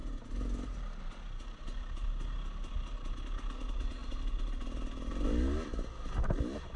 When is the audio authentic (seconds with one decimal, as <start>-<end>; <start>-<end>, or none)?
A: 0.0-4.0; 5.3-6.8